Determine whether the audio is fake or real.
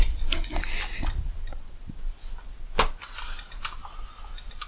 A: real